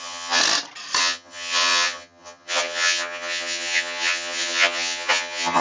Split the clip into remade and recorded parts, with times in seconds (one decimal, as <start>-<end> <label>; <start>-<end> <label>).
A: 0.0-0.4 remade; 0.4-1.0 recorded; 1.0-5.6 remade